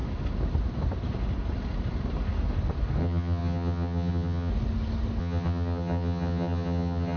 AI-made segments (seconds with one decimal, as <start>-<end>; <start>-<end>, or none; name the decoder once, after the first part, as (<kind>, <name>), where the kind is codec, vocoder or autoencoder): 3.0-4.5 (vocoder, HiFi-GAN); 5.2-7.2